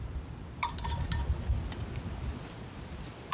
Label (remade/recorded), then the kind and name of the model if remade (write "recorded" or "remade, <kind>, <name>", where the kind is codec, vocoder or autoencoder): recorded